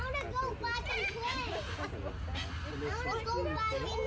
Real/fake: real